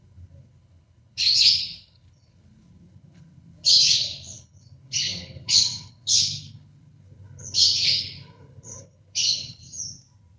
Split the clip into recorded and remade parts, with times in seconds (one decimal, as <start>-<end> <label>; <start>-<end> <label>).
0.0-9.6 remade; 9.6-10.4 recorded